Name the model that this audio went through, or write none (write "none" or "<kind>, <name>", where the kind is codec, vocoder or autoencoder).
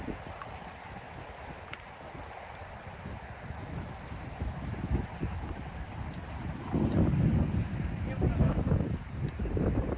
none